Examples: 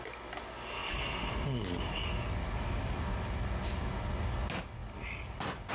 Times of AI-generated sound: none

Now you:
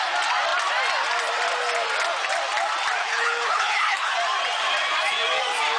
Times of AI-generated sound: 3.0-4.1

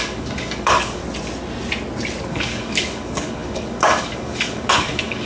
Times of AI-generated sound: 0.0-1.0; 2.3-5.3

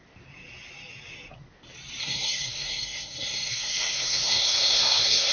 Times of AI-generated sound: 2.0-5.3